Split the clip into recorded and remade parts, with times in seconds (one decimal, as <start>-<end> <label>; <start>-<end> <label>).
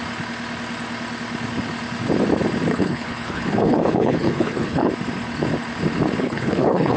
0.0-2.7 recorded; 2.7-4.9 remade; 4.9-6.2 recorded; 6.2-7.0 remade